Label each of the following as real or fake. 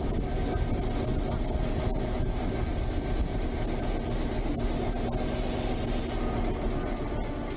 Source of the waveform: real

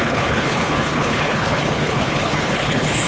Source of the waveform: fake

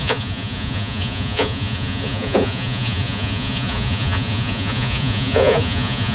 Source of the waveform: fake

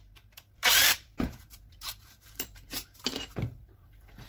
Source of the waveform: fake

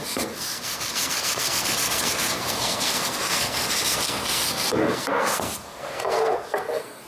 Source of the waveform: fake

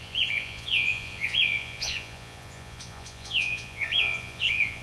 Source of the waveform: fake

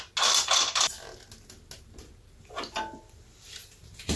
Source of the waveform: real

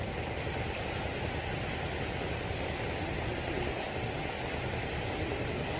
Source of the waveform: real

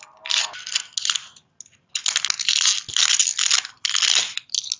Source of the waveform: real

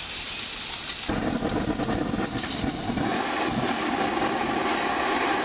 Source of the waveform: fake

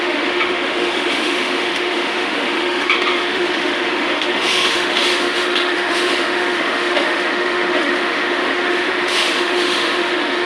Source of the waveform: fake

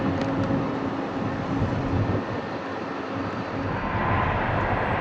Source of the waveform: real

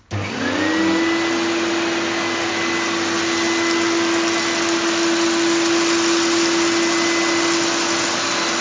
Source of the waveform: real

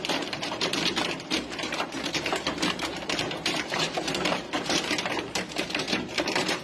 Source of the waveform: fake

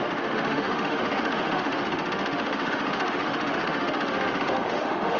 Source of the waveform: fake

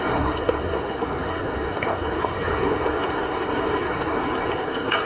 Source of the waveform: fake